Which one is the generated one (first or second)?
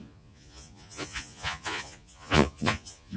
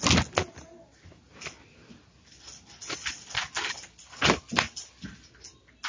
first